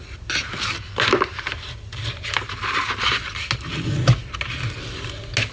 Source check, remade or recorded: recorded